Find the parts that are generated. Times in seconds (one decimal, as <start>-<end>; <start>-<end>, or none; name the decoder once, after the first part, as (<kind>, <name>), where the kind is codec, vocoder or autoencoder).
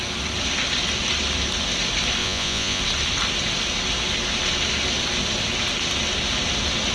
2.2-2.8 (vocoder, Vocos)